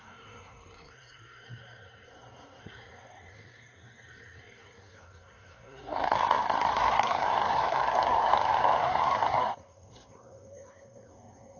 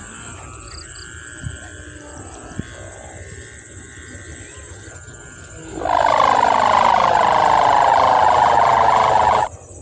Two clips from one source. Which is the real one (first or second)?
second